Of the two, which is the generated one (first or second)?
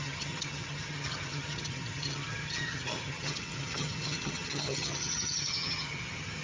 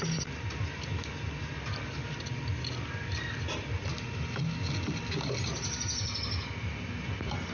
first